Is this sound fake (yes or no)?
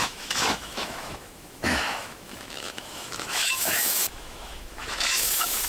yes